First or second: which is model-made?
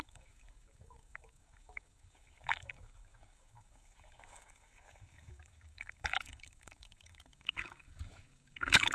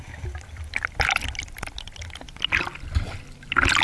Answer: first